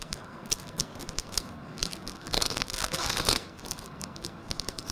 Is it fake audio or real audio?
fake